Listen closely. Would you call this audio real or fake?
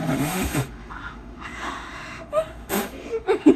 fake